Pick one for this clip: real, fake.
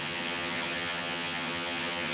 fake